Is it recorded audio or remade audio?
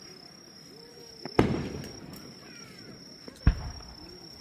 remade